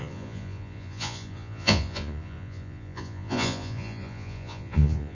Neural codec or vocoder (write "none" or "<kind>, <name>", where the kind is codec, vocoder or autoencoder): vocoder, Vocos